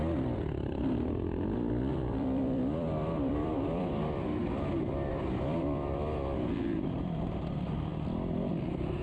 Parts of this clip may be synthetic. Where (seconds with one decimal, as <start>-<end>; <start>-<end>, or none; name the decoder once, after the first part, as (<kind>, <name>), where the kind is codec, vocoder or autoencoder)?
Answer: 0.0-7.9 (vocoder, BigVGAN v2); 8.6-9.0